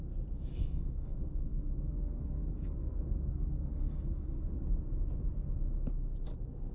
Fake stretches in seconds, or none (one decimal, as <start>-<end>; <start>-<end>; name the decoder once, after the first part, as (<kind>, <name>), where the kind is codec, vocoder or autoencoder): 0.5-4.5 (codec, SNAC)